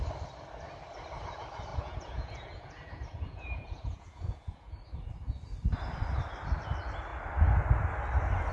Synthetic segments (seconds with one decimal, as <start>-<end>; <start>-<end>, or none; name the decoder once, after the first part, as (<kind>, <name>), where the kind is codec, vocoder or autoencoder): 1.7-4.8 (vocoder, Vocos)